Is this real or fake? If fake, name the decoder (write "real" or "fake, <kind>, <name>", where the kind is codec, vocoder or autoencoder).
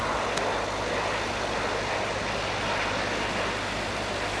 real